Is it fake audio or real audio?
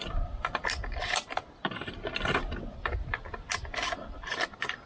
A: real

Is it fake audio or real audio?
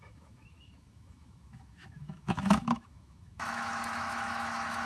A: fake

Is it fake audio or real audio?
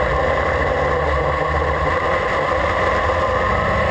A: real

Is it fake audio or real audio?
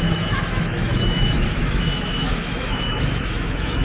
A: fake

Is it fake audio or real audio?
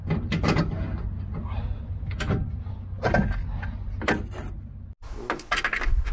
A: real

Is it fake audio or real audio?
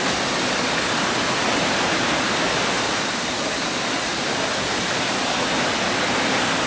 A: real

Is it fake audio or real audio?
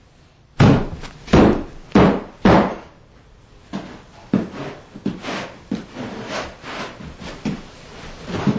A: real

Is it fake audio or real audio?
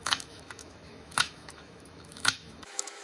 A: fake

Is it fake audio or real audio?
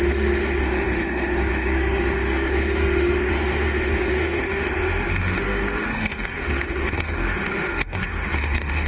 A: fake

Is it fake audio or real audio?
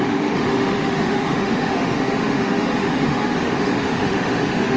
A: fake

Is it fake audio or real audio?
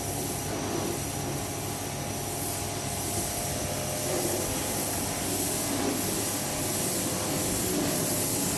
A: real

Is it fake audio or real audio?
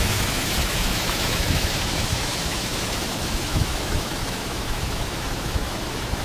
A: fake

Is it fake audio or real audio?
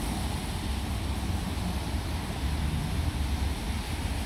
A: real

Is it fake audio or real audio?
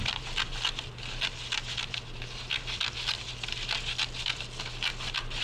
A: real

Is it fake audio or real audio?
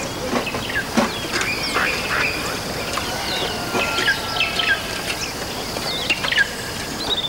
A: real